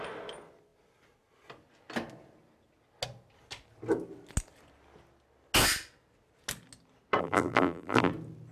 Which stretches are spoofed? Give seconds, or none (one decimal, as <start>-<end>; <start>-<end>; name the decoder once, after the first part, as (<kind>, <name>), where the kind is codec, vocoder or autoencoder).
7.2-8.1 (vocoder, BigVGAN v2)